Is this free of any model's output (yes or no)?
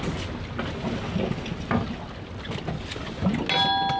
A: yes